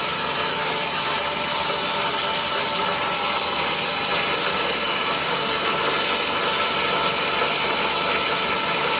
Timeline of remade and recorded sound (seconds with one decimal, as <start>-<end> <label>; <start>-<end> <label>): 0.0-4.5 recorded; 4.5-5.8 remade; 5.8-9.0 recorded